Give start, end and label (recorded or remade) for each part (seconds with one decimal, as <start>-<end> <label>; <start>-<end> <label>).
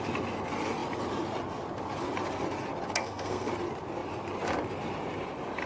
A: 0.0-3.0 recorded; 3.0-3.5 remade; 3.5-5.7 recorded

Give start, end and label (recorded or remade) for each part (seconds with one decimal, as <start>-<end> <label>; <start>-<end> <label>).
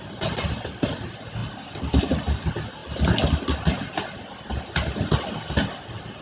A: 0.0-6.2 recorded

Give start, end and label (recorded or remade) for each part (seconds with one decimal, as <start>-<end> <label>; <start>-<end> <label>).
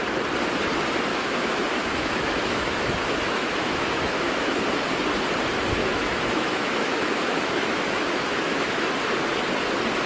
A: 0.0-1.1 recorded; 1.1-4.6 remade; 4.6-5.8 recorded; 5.8-8.9 remade; 8.9-10.1 recorded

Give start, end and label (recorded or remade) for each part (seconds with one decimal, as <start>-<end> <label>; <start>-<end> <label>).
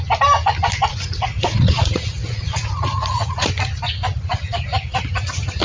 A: 0.0-0.9 recorded; 0.9-3.5 remade; 3.5-5.6 recorded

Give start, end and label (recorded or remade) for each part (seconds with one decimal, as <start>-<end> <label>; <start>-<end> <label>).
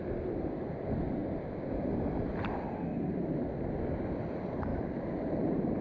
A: 0.0-2.9 recorded; 2.9-3.4 remade; 3.4-4.7 recorded; 4.7-5.8 remade